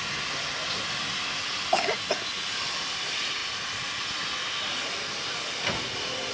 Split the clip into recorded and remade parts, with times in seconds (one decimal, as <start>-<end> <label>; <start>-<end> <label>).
0.0-6.3 recorded